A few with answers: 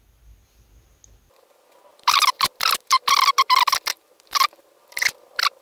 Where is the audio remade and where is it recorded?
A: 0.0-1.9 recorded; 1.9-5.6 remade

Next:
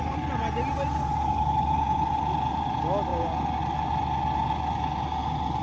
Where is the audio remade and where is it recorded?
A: 0.0-1.1 recorded; 1.1-2.1 remade; 2.1-5.6 recorded